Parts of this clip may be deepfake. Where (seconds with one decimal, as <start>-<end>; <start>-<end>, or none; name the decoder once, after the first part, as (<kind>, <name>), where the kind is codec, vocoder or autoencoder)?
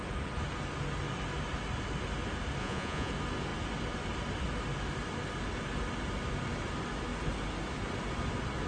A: 2.6-3.1 (vocoder, Vocos)